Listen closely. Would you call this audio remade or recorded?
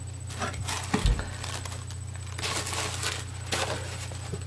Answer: recorded